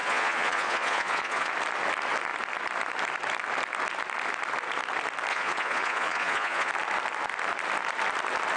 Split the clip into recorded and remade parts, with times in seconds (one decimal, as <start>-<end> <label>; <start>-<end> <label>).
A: 0.0-1.5 remade; 1.5-5.3 recorded; 5.3-6.7 remade; 6.7-8.6 recorded

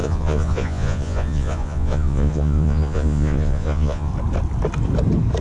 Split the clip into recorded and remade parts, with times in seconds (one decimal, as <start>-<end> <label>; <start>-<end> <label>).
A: 0.0-4.1 remade; 4.1-5.4 recorded

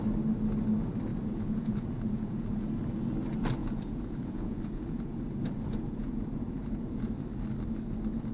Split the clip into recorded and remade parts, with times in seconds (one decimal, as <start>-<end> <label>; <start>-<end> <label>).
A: 0.0-1.1 recorded; 1.1-2.7 remade; 2.7-3.6 recorded; 3.6-7.1 remade; 7.1-8.3 recorded

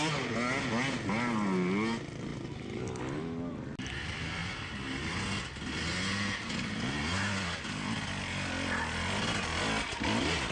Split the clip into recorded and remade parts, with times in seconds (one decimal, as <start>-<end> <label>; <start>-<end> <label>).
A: 0.0-10.5 recorded

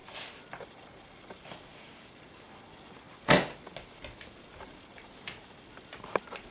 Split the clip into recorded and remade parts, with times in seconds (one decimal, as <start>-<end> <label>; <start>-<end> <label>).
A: 0.0-6.5 recorded

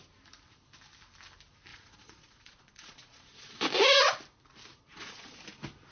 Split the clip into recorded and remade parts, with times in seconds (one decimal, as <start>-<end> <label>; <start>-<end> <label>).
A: 0.0-1.7 recorded; 1.7-3.7 remade; 3.7-4.7 recorded; 4.7-5.4 remade; 5.4-5.9 recorded

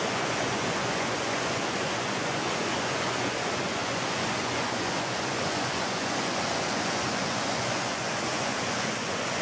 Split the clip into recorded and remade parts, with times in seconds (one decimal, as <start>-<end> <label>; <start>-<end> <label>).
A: 0.0-9.4 remade